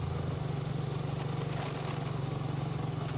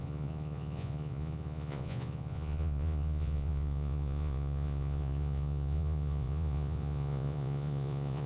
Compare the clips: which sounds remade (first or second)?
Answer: second